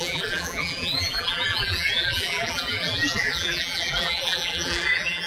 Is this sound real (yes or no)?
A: no